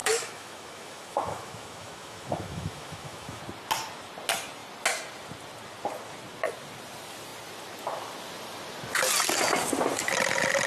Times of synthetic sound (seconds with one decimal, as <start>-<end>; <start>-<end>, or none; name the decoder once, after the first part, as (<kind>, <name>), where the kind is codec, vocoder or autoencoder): 0.0-3.4 (autoencoder, DAC-VAE)